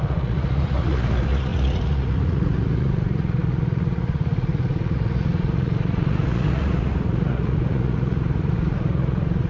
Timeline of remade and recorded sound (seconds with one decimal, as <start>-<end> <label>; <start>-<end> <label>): 0.0-9.5 remade